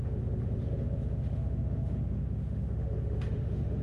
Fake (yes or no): yes